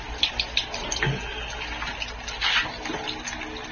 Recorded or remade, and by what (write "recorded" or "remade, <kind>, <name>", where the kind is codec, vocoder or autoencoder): recorded